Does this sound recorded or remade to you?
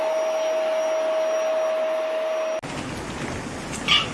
recorded